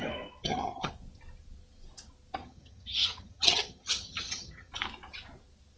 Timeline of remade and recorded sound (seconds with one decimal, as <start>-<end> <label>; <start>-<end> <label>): 0.0-0.4 recorded; 0.4-0.9 remade; 0.9-2.4 recorded; 2.4-4.7 remade; 4.7-5.8 recorded